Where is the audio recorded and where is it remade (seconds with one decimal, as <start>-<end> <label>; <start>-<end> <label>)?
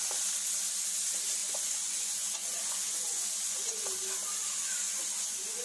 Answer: 0.0-1.4 recorded; 1.4-4.0 remade; 4.0-4.6 recorded; 4.6-5.6 remade